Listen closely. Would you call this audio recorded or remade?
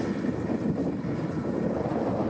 recorded